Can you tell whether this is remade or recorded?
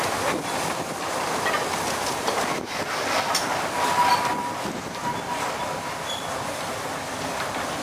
recorded